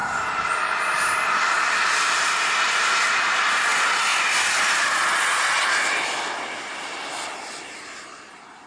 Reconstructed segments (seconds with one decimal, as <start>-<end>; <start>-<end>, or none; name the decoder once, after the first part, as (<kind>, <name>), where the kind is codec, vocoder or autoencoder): none